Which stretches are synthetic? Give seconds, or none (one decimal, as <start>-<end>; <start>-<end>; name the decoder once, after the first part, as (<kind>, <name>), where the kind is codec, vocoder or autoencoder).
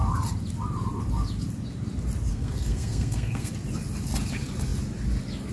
2.3-3.5 (codec, SNAC)